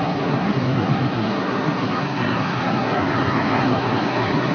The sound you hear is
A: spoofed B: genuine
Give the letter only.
A